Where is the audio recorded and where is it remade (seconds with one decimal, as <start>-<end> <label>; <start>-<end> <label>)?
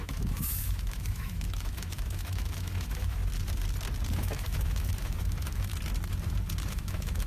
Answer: 0.0-3.2 remade; 3.2-4.1 recorded; 4.1-5.7 remade; 5.7-6.7 recorded; 6.7-7.3 remade